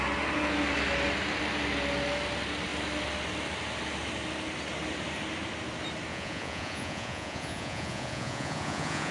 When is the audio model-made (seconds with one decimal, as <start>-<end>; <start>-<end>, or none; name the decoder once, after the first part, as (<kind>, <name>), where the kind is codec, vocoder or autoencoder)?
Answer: 6.1-9.1 (vocoder, Vocos)